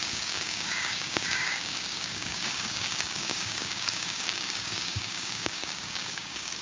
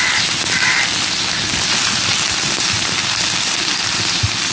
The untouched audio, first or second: second